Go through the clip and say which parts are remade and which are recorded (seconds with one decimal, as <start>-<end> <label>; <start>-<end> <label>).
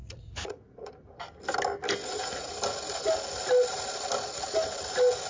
0.0-0.9 remade; 0.9-2.0 recorded; 2.0-2.5 remade; 2.5-5.3 recorded